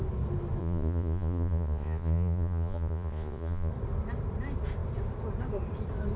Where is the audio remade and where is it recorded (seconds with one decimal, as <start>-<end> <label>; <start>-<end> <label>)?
0.0-0.6 recorded; 0.6-3.7 remade; 3.7-6.2 recorded